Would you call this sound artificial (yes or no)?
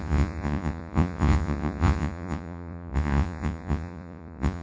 yes